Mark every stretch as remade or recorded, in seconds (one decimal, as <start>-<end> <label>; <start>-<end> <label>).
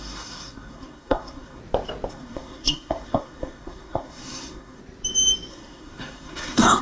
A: 0.0-1.6 remade; 1.6-2.1 recorded; 2.1-4.8 remade; 4.8-5.5 recorded; 5.5-6.8 remade